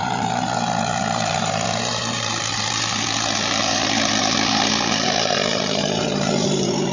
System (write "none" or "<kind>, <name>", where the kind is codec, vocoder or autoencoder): vocoder, BigVGAN v2